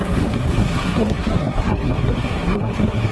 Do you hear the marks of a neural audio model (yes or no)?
yes